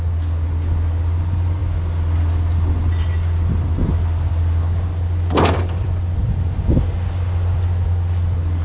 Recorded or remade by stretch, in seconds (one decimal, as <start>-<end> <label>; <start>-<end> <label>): 0.0-8.6 recorded